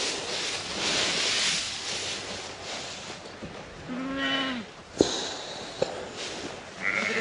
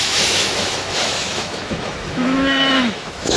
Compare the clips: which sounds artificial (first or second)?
second